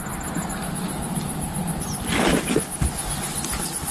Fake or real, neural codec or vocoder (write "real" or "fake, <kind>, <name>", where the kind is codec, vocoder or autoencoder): real